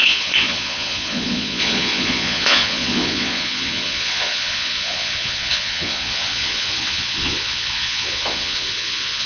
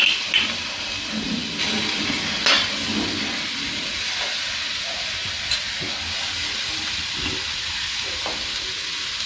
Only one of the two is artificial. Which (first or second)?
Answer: first